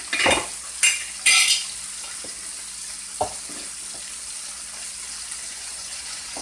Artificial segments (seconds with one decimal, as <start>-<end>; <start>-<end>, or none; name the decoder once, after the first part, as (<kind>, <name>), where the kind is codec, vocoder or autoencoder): 5.5-6.4 (vocoder, Vocos)